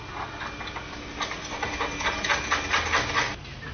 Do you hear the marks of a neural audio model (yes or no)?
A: no